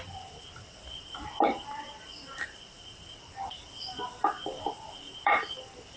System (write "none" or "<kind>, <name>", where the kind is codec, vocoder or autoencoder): vocoder, BigVGAN v2